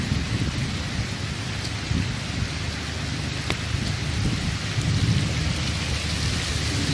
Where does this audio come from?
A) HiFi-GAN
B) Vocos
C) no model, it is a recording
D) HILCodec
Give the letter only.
C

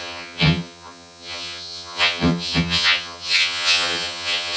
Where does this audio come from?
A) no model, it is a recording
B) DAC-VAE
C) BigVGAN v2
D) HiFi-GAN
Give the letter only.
D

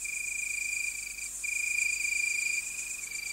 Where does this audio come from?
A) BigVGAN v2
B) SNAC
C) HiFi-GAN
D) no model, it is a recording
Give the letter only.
D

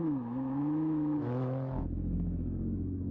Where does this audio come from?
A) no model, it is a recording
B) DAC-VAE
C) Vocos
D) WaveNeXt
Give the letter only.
B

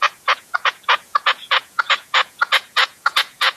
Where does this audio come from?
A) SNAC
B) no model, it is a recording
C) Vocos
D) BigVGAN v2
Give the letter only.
C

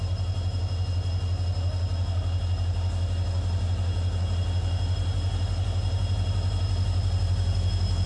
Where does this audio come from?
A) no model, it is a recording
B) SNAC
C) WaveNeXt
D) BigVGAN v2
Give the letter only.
A